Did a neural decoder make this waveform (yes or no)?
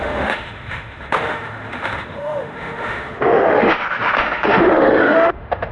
yes